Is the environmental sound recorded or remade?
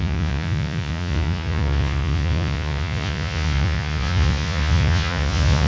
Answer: remade